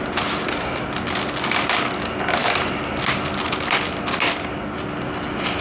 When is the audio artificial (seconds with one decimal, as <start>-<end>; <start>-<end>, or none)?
none